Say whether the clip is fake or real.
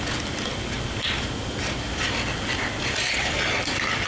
real